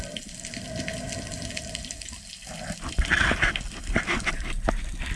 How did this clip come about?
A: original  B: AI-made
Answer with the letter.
A